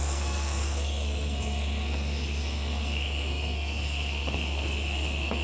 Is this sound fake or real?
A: fake